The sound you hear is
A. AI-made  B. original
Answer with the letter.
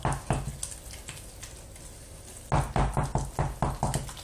B